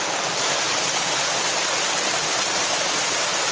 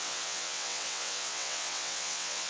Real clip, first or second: first